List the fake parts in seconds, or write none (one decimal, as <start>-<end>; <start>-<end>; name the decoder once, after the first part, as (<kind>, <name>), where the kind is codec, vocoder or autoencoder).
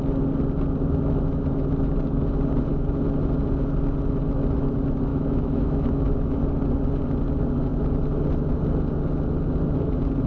5.1-6.4 (autoencoder, DAC-VAE)